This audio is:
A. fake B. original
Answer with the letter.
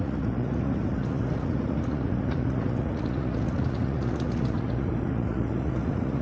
A